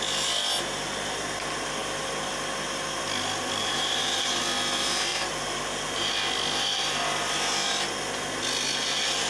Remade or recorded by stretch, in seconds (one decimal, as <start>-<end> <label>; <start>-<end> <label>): 0.0-3.6 recorded; 3.6-4.4 remade; 4.4-5.1 recorded; 5.1-6.1 remade; 6.1-9.3 recorded